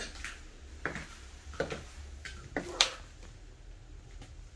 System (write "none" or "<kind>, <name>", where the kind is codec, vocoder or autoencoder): none